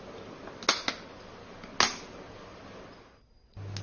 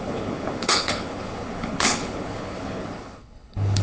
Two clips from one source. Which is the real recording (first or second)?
first